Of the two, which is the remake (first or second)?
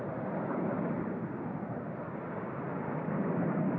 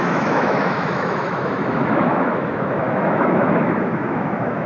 second